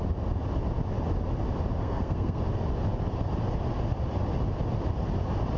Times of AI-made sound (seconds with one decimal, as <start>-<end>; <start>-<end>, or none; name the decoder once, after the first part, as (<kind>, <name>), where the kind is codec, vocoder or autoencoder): 1.8-2.4 (codec, SNAC)